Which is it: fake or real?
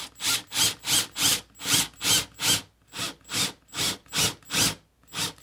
real